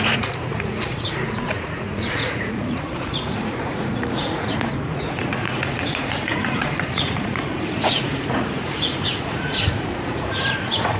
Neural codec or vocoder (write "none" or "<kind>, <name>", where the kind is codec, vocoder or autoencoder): vocoder, Vocos